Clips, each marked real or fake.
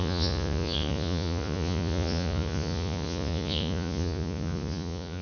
fake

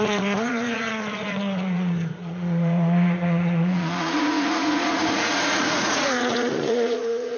fake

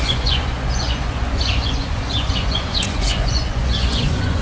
fake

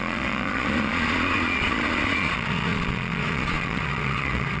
fake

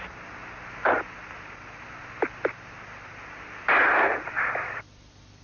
real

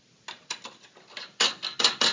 real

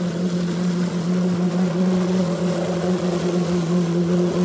fake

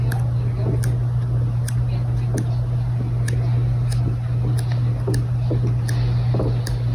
real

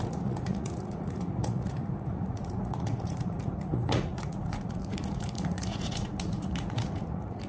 fake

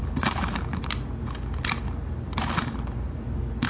real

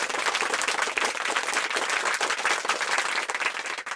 real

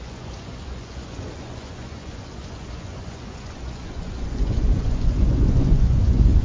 fake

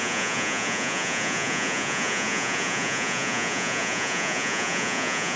fake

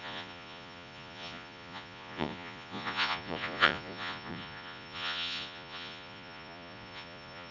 fake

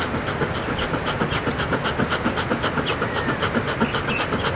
real